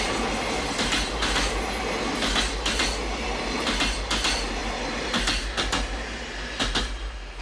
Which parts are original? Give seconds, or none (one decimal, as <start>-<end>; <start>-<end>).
0.0-7.4